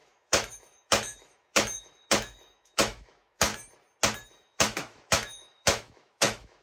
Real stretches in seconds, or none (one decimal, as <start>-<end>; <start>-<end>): 3.5-4.3